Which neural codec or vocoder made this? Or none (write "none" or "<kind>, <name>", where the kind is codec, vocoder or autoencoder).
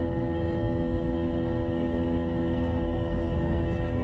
codec, SNAC